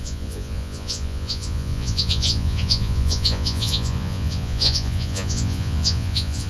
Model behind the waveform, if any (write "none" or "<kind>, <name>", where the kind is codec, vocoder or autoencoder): vocoder, Vocos